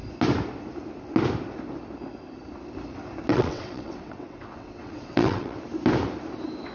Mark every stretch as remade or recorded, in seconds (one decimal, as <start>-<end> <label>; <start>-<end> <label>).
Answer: 0.0-3.3 recorded; 3.3-5.6 remade; 5.6-6.7 recorded